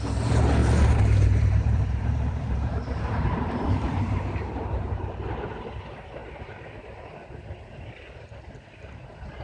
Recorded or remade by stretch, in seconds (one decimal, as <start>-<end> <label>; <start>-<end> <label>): 0.0-0.6 recorded; 0.6-5.4 remade; 5.4-9.4 recorded

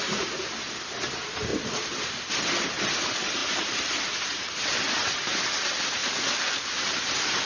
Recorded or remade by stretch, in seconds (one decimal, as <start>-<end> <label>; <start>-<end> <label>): 0.0-3.4 recorded; 3.4-4.9 remade; 4.9-6.0 recorded; 6.0-7.5 remade

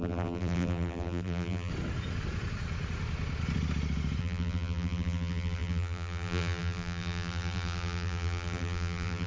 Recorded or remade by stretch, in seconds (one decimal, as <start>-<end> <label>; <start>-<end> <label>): 0.0-1.7 remade; 1.7-4.2 recorded; 4.2-9.3 remade